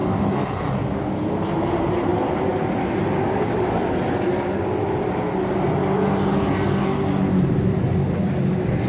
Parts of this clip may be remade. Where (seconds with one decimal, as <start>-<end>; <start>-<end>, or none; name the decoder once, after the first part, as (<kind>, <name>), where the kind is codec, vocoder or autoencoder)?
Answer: none